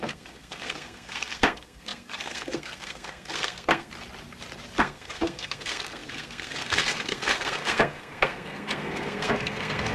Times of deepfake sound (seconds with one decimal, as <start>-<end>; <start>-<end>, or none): 0.0-3.9; 4.8-9.9